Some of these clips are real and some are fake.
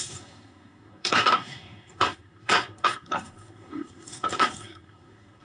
fake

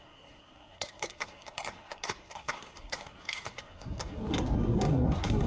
fake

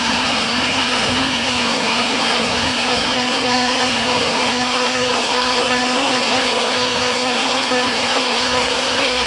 fake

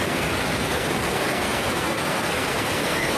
fake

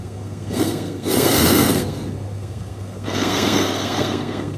fake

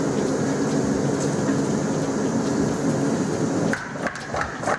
real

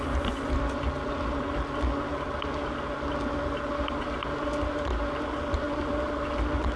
real